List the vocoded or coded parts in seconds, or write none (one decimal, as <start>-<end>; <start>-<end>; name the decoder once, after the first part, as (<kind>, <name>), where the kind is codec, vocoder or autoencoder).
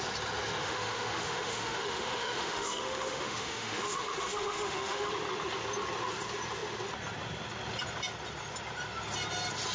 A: 0.6-5.1 (autoencoder, DAC-VAE)